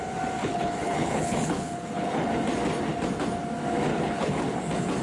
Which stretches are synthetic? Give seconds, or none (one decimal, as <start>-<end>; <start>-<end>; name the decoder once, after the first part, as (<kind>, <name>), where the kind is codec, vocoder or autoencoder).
0.4-2.3 (codec, HILCodec); 3.9-4.6